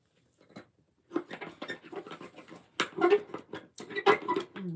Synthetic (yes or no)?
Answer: no